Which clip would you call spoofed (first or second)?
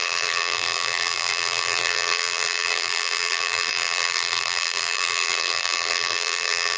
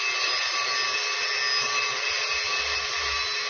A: first